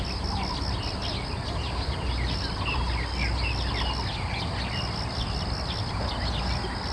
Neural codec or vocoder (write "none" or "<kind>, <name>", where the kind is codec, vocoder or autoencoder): none